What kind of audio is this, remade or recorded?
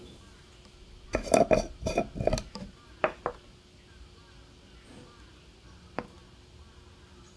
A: recorded